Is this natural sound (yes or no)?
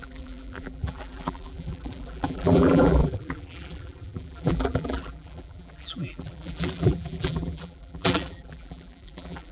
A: no